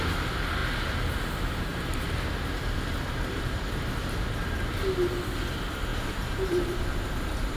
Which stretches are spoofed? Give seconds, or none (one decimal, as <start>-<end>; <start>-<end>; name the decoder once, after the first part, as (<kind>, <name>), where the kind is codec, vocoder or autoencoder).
1.7-4.4 (vocoder, BigVGAN v2); 5.9-7.6